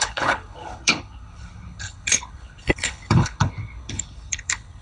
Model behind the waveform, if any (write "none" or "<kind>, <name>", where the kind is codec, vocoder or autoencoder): codec, HILCodec